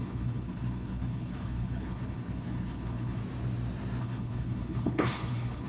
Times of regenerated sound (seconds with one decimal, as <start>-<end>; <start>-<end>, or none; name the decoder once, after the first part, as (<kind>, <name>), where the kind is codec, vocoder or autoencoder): 0.0-3.2 (codec, HILCodec); 4.0-5.7